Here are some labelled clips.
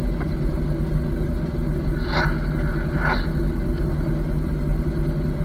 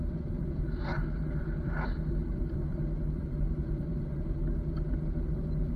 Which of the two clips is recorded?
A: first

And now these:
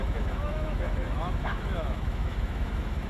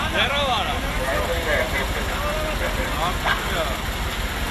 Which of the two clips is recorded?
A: second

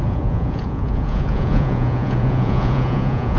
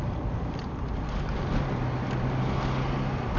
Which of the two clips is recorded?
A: second